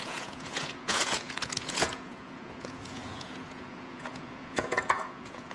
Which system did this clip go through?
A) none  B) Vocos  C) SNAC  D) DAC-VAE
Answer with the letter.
B